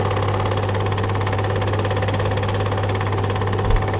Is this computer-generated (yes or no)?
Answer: no